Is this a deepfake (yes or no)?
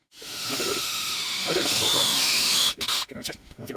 yes